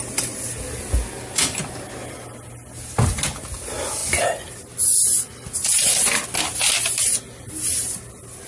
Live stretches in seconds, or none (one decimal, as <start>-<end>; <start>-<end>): 0.0-8.5